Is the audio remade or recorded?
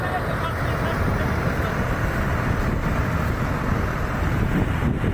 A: recorded